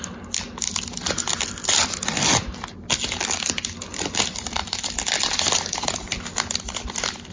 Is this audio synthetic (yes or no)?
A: no